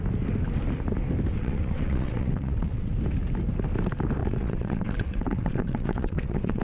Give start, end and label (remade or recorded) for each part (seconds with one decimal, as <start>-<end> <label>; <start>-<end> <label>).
0.0-1.3 recorded; 1.3-2.9 remade; 2.9-4.2 recorded; 4.2-6.6 remade